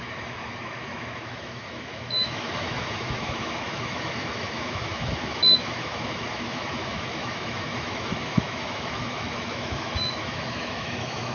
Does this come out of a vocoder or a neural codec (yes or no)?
yes